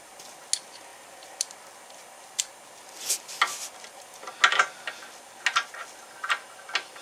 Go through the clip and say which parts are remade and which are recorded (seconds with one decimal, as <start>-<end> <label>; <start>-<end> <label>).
0.0-7.0 recorded